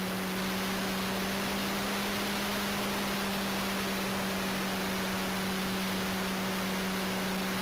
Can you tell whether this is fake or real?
real